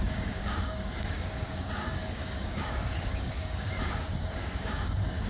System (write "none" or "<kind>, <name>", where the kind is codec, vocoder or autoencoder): codec, DAC